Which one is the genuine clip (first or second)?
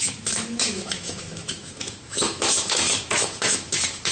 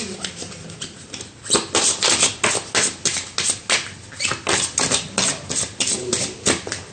second